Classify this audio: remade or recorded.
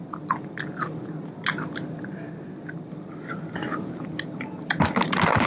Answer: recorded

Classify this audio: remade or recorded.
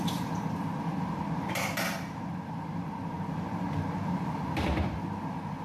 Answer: remade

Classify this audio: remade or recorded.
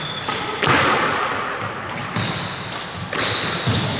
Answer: recorded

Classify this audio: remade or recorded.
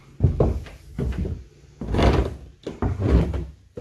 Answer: recorded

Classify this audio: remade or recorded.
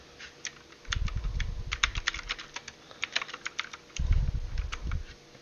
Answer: recorded